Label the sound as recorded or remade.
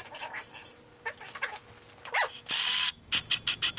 recorded